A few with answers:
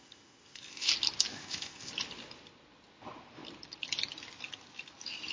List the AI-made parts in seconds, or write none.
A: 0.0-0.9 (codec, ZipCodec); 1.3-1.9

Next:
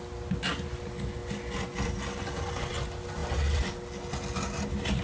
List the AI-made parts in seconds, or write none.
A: none

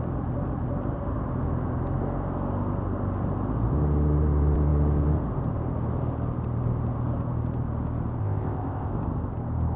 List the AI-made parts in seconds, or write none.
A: 8.2-8.9 (codec, ZipCodec)

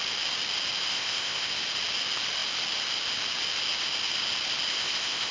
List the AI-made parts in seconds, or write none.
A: 0.9-1.5 (codec, ZipCodec); 4.7-5.3

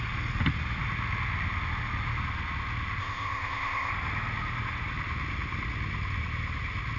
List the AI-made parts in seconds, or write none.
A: 3.0-3.9 (codec, ZipCodec)

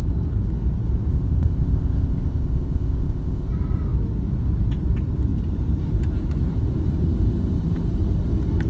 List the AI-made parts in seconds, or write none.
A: 1.1-3.5 (codec, ZipCodec)